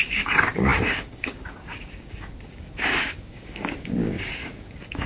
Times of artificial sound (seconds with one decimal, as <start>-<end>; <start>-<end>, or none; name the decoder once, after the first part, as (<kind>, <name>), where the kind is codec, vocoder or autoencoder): 0.0-5.1 (codec, DAC)